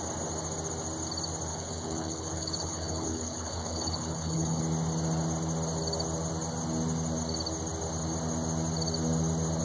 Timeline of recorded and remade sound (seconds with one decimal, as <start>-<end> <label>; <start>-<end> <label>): 0.0-1.5 recorded; 1.5-4.6 remade; 4.6-9.6 recorded